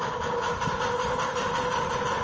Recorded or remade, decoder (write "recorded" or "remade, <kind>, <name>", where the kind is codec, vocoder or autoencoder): recorded